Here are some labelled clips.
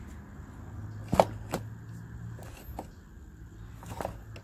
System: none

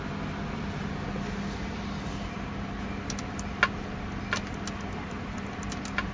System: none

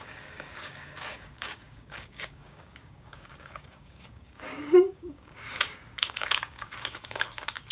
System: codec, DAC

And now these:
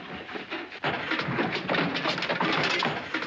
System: none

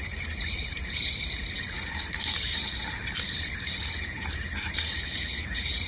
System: vocoder, BigVGAN v2